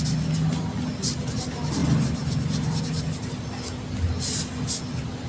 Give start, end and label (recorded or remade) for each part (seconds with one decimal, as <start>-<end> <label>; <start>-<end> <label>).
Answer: 0.0-5.3 recorded